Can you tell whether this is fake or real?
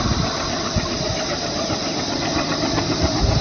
fake